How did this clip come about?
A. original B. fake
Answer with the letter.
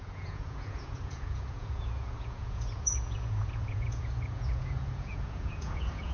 B